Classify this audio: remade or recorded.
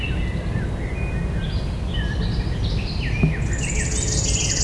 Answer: recorded